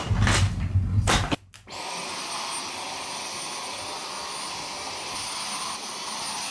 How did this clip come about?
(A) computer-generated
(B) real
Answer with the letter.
B